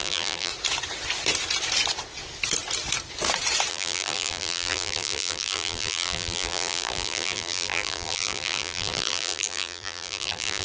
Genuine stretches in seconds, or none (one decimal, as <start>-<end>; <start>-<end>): 0.5-3.7